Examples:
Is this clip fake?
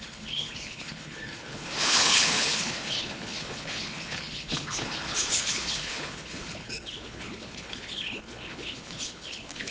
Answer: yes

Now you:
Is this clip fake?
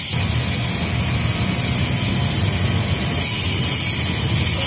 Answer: no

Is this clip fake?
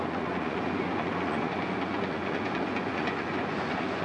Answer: yes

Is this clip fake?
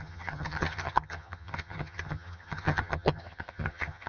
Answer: yes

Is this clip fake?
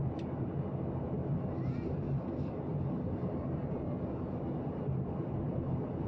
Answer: no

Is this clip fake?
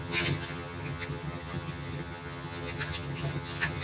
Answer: yes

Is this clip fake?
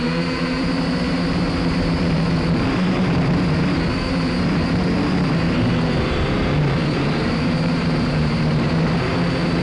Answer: yes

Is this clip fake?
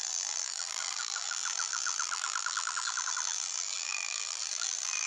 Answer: yes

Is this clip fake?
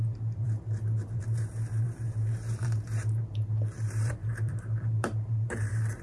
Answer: yes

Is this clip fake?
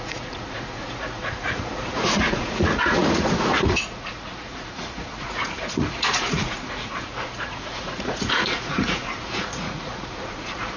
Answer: yes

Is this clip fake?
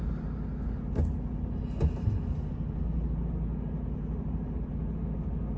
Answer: no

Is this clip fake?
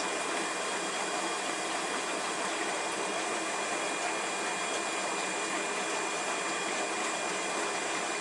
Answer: no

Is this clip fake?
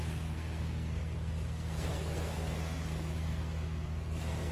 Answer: yes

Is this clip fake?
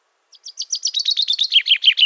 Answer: no